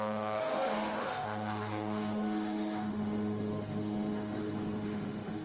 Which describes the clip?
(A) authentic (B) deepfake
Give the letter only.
B